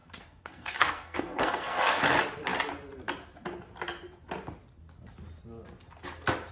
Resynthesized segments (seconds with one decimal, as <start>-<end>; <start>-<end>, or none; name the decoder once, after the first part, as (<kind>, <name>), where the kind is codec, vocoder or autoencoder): 0.0-2.0 (codec, SNAC)